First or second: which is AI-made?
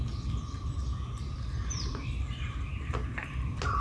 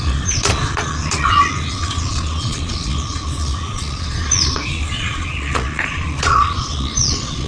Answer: second